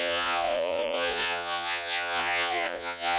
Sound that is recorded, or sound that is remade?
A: remade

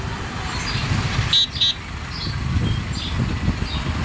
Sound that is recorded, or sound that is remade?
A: recorded